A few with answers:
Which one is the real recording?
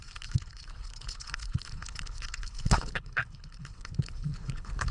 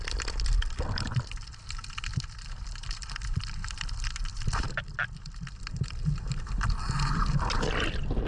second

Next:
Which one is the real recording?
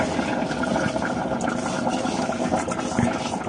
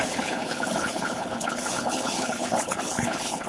first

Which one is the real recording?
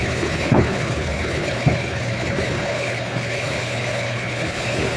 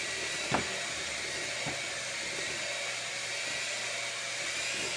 second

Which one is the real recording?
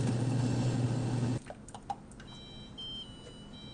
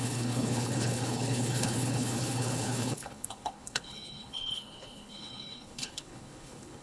first